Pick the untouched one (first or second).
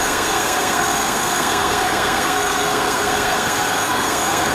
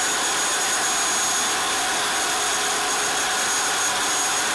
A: second